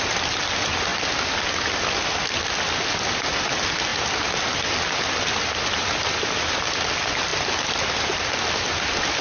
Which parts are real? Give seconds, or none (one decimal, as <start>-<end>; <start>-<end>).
0.0-9.2